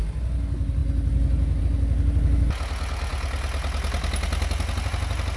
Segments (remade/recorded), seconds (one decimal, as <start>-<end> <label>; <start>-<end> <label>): 0.0-5.4 recorded